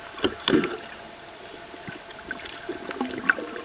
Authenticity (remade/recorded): recorded